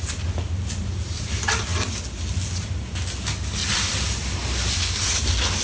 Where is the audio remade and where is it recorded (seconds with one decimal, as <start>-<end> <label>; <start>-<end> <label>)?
0.0-3.6 recorded; 3.6-4.8 remade; 4.8-5.6 recorded